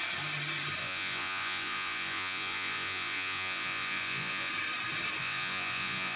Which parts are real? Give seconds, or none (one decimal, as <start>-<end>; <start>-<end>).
0.0-0.8; 4.5-5.2